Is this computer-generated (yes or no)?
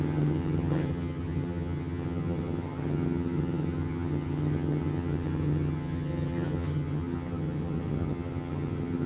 yes